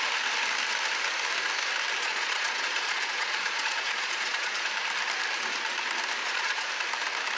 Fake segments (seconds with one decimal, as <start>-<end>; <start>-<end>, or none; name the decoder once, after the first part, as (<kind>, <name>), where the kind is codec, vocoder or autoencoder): 2.0-4.7 (vocoder, Vocos); 6.2-6.7